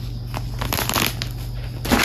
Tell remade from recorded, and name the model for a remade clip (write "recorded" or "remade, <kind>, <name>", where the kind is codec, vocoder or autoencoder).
recorded